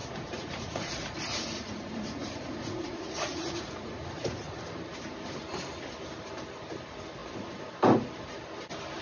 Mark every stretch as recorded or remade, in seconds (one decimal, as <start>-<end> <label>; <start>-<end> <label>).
0.0-4.6 remade; 4.6-9.0 recorded